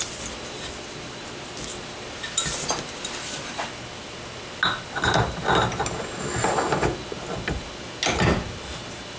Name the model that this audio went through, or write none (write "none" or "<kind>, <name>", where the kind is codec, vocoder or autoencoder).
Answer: none